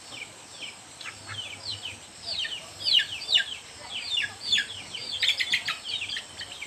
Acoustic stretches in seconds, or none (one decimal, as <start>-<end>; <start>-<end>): 0.0-1.7; 2.5-3.4; 3.9-6.7